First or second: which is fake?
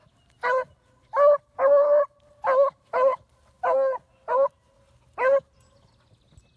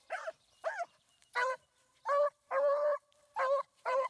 second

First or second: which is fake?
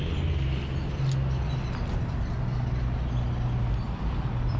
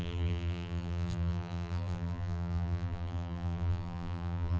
second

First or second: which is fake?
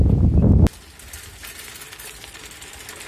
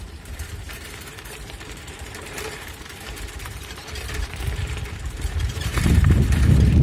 second